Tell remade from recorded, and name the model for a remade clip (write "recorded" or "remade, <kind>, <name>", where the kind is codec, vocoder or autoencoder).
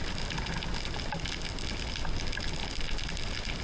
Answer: recorded